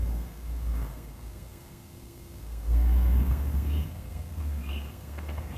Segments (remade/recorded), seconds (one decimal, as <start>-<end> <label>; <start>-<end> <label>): 0.0-5.6 remade